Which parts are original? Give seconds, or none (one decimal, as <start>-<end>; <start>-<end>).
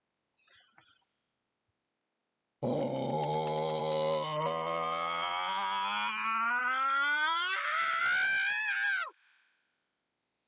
0.0-10.5